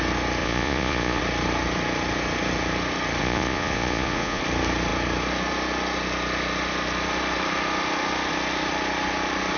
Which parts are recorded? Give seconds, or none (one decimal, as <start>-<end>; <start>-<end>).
0.0-0.4; 1.2-3.2; 4.4-9.6